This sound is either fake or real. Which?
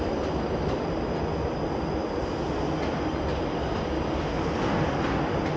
real